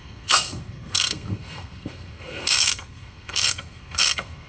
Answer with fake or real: fake